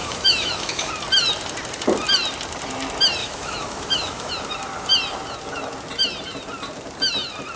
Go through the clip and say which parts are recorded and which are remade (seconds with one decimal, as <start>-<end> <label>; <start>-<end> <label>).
0.0-0.9 remade; 0.9-3.2 recorded; 3.2-4.3 remade; 4.3-7.6 recorded